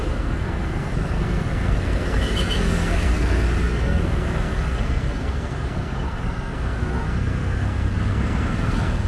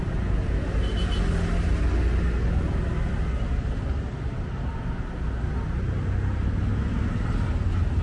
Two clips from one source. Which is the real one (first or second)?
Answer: second